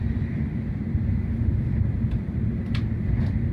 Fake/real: real